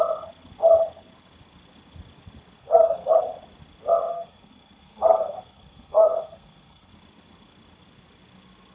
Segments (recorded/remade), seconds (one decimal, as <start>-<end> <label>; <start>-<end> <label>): 0.0-2.6 recorded; 2.6-3.2 remade; 3.2-4.1 recorded; 4.1-6.9 remade; 6.9-8.7 recorded